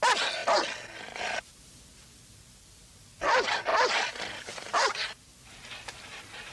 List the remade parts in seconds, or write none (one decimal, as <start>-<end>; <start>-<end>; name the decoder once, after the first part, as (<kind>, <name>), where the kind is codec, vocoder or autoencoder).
none